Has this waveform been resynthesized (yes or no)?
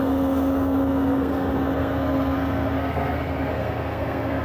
yes